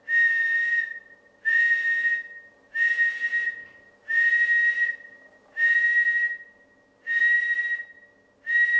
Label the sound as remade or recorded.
recorded